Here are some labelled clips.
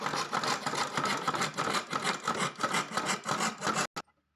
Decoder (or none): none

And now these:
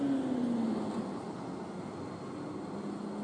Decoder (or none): none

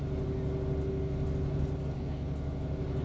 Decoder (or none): none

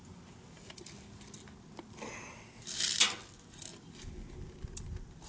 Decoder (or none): none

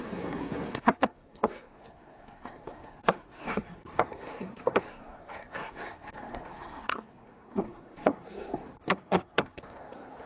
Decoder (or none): codec, SNAC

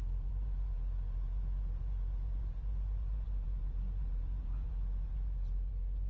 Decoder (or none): vocoder, BigVGAN v2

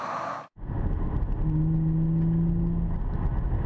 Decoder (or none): none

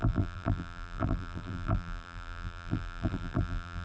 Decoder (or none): vocoder, BigVGAN v2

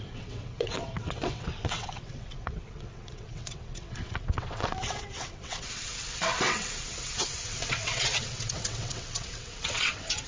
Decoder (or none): vocoder, WaveNeXt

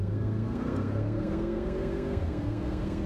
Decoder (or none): codec, SNAC